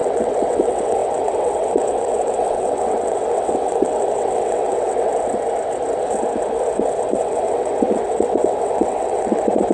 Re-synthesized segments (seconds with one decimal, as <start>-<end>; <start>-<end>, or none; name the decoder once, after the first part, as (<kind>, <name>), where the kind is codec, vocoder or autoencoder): 0.0-5.1 (vocoder, WaveNeXt); 7.2-9.7